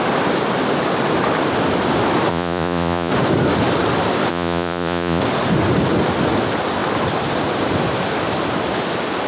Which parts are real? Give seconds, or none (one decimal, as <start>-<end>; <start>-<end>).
0.0-2.3; 3.1-4.3; 5.2-9.3